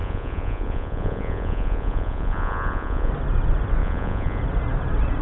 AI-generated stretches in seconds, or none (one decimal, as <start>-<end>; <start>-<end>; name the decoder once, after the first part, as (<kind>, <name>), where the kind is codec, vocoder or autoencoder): 0.0-3.1 (vocoder, Vocos); 3.8-4.4